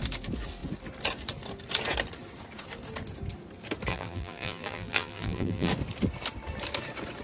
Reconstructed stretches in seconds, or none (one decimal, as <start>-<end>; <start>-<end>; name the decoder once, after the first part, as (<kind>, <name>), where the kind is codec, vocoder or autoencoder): 3.9-5.7 (vocoder, BigVGAN v2)